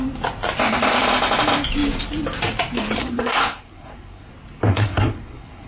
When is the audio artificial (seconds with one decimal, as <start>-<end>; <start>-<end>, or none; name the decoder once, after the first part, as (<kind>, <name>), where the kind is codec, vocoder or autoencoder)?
3.0-4.3 (codec, SNAC); 4.7-5.7